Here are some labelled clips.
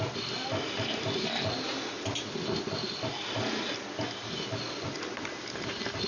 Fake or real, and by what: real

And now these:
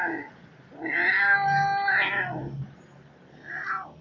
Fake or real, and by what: real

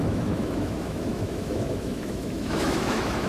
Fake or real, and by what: fake, autoencoder, DAC-VAE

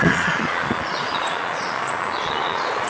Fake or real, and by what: fake, vocoder, Vocos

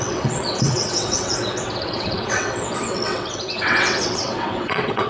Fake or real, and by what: fake, vocoder, WaveNeXt